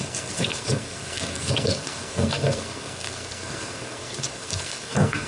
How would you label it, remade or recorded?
remade